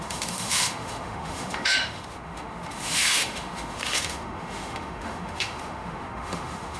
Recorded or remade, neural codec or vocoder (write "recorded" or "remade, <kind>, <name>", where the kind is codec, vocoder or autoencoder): remade, autoencoder, DAC-VAE